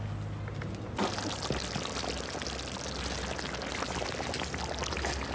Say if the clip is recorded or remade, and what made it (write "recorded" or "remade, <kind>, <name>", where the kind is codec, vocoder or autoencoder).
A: recorded